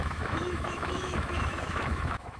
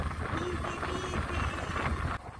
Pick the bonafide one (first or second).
second